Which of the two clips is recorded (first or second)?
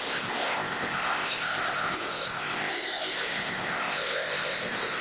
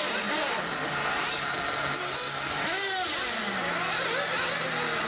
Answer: second